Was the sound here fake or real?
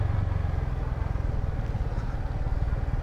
real